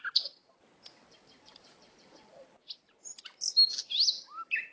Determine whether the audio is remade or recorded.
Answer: recorded